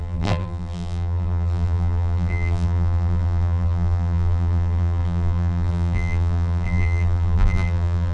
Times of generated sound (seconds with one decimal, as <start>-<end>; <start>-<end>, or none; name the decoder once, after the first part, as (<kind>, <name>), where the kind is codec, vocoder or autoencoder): 0.0-8.1 (vocoder, BigVGAN v2)